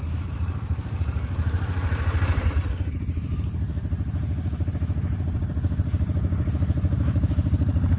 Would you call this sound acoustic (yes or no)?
no